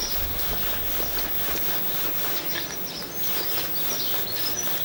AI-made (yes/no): yes